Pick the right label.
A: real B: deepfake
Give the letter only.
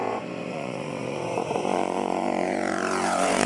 B